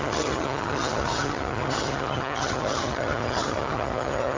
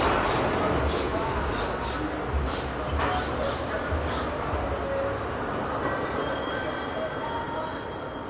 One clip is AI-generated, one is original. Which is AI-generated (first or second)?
first